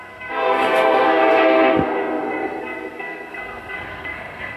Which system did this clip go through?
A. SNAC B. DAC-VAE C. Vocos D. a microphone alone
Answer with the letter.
A